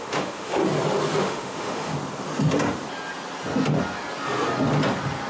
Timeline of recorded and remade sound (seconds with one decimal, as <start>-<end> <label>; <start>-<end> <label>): 0.0-0.6 remade; 0.6-1.2 recorded; 1.2-1.9 remade; 1.9-5.3 recorded